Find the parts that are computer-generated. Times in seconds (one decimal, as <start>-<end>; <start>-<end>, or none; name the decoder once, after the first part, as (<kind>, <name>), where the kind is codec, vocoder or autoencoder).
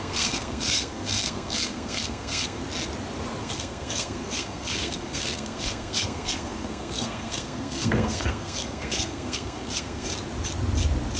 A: 0.0-2.6 (codec, SNAC); 3.4-10.1